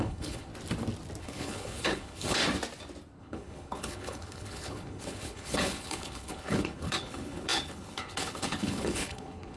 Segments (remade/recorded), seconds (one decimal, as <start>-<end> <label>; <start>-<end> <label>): 0.0-0.5 remade; 0.5-1.2 recorded; 1.2-2.4 remade; 2.4-3.2 recorded; 3.2-9.6 remade